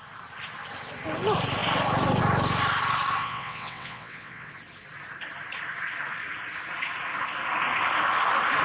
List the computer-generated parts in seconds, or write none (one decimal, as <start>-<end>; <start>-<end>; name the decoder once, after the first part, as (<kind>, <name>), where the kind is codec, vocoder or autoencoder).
3.2-4.5 (vocoder, WaveNeXt)